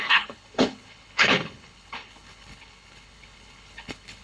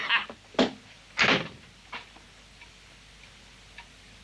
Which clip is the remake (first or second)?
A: first